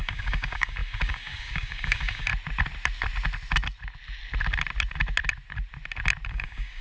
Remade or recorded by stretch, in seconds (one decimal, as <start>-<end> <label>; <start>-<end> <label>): 0.0-2.3 remade; 2.3-6.3 recorded; 6.3-6.8 remade